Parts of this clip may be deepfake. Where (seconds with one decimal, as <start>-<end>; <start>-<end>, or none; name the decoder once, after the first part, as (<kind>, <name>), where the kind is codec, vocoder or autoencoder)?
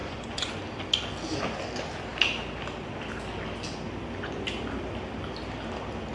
0.0-0.5 (vocoder, Vocos)